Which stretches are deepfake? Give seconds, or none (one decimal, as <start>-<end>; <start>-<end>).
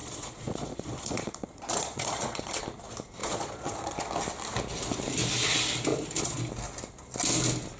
0.0-2.6; 3.2-4.1; 5.9-6.4